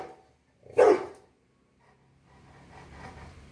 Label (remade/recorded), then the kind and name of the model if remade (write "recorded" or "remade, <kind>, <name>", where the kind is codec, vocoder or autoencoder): recorded